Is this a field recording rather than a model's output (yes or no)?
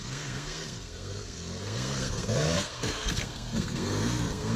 no